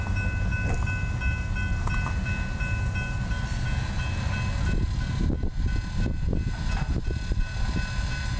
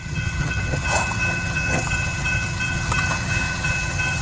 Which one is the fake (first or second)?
second